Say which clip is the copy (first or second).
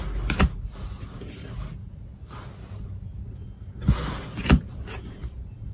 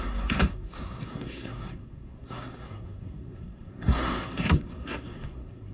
second